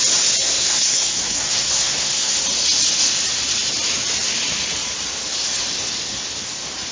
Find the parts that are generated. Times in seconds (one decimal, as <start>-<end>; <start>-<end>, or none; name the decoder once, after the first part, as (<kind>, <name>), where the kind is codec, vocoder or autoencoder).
0.4-2.4 (codec, SNAC)